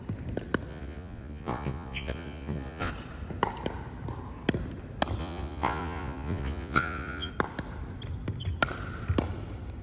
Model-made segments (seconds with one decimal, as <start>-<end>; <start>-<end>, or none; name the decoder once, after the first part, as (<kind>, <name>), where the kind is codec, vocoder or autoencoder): 0.7-2.9 (vocoder, Vocos); 5.2-7.3